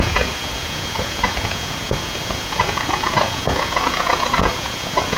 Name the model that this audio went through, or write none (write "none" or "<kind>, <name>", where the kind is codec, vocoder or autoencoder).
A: vocoder, Vocos